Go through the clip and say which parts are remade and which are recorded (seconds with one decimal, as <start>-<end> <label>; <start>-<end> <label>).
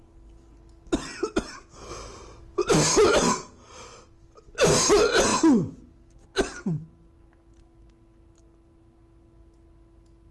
0.0-10.3 recorded